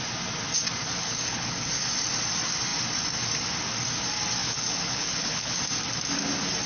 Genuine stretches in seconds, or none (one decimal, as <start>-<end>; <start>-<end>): 0.0-1.0; 1.8-4.4; 5.6-6.7